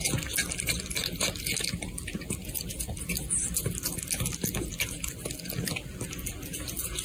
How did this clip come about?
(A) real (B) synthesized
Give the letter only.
A